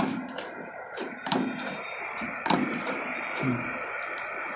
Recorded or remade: remade